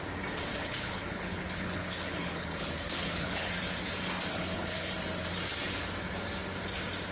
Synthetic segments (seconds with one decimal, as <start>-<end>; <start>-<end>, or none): 0.5-3.5; 4.3-4.9